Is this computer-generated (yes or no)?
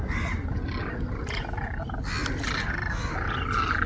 no